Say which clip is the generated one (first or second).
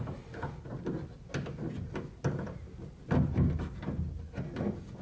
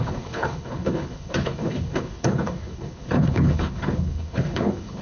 second